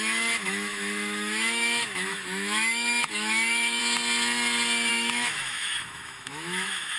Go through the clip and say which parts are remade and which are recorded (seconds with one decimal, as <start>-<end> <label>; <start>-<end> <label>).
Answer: 0.0-3.8 remade; 3.8-4.9 recorded; 4.9-7.0 remade